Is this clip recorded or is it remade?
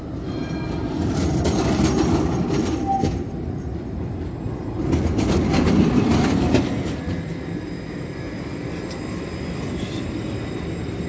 recorded